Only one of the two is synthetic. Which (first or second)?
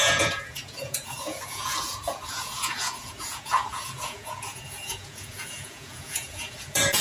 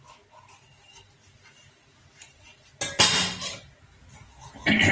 first